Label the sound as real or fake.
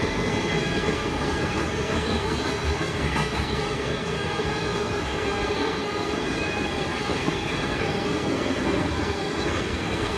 fake